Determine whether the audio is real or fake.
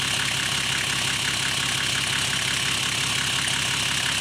real